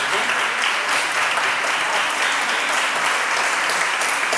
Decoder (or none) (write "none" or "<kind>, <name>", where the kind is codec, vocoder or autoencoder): vocoder, BigVGAN v2